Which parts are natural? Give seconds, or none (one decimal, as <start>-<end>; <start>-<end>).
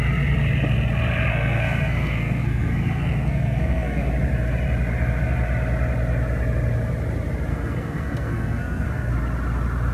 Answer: 0.0-1.3; 4.1-7.5; 9.1-9.9